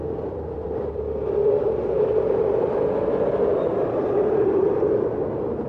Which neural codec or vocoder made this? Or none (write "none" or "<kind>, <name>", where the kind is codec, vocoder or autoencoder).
vocoder, BigVGAN v2